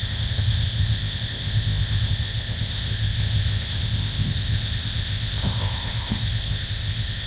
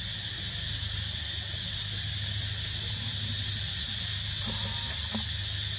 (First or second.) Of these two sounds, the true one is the second